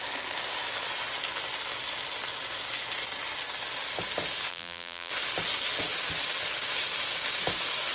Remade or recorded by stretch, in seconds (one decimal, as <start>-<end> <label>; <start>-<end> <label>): 0.0-4.5 recorded; 4.5-5.1 remade; 5.1-7.9 recorded